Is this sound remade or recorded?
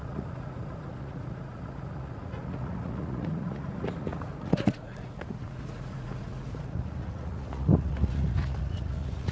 remade